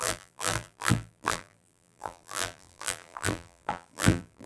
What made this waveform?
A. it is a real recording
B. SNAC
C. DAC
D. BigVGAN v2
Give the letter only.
D